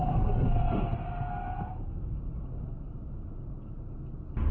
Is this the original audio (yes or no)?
yes